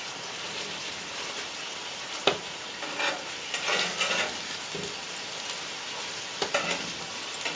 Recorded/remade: recorded